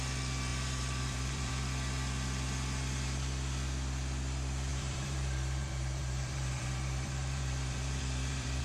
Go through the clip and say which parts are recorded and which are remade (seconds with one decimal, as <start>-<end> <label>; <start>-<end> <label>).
0.0-0.5 recorded; 0.5-1.5 remade; 1.5-4.7 recorded; 4.7-8.6 remade

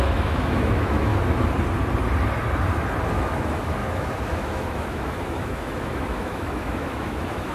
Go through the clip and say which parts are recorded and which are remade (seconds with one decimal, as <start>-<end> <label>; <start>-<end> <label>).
0.0-1.1 remade; 1.1-3.1 recorded; 3.1-7.5 remade

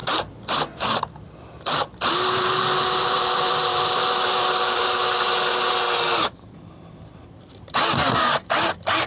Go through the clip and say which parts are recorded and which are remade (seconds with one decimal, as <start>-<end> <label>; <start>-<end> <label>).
0.0-0.8 recorded; 0.8-4.9 remade; 4.9-6.3 recorded; 6.3-9.1 remade

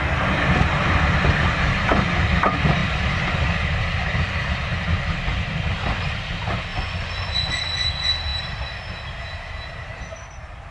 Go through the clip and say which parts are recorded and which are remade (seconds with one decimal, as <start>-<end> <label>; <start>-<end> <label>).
0.0-6.7 recorded; 6.7-7.5 remade; 7.5-10.7 recorded